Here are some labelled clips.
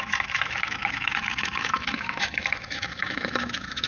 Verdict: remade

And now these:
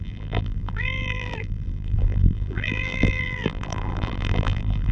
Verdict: remade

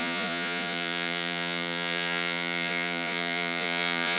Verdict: remade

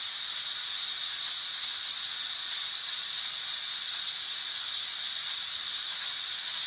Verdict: recorded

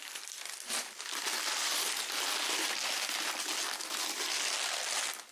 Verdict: recorded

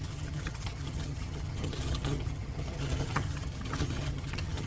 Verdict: remade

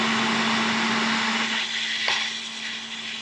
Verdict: recorded